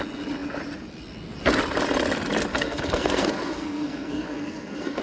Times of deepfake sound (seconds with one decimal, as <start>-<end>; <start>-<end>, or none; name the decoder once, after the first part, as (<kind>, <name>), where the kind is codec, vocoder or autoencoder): 2.5-5.0 (codec, SNAC)